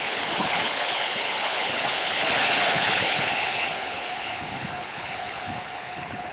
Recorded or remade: remade